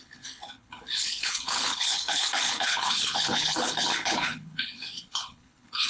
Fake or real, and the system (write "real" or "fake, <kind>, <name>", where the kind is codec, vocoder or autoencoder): fake, codec, HILCodec